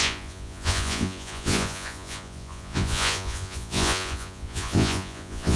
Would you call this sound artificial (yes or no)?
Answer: yes